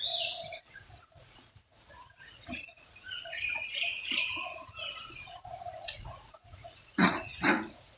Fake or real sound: fake